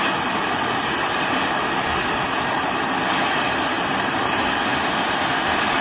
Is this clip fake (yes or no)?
no